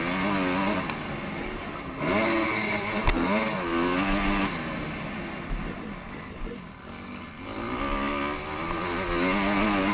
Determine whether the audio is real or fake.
real